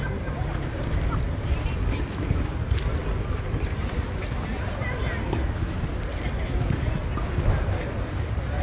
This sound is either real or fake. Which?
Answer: real